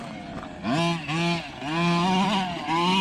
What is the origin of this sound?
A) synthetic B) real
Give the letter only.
B